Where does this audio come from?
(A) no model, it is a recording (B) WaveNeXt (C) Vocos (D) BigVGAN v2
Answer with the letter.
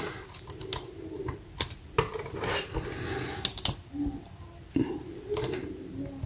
A